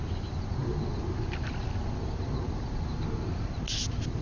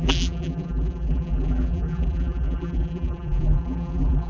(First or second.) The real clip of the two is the first